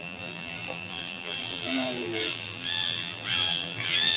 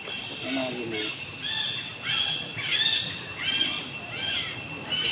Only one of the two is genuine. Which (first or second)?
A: second